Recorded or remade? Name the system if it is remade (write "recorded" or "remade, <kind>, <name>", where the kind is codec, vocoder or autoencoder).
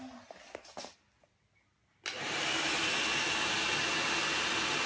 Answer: recorded